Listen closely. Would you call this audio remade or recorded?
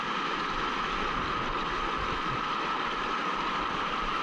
recorded